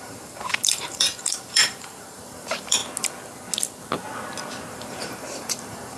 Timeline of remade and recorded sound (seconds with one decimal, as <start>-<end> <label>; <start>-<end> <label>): 0.0-2.8 remade; 2.8-4.7 recorded; 4.7-6.0 remade